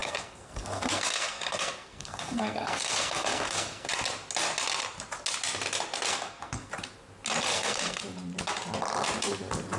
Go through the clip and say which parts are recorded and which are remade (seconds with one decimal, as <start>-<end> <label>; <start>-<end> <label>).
0.0-3.9 remade; 3.9-6.1 recorded; 6.1-6.7 remade; 6.7-7.5 recorded; 7.5-8.0 remade; 8.0-9.8 recorded